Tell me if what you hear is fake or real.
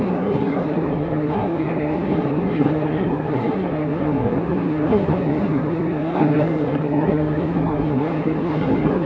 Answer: fake